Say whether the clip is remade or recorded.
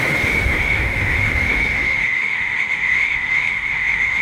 remade